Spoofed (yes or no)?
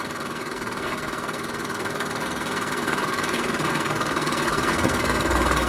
yes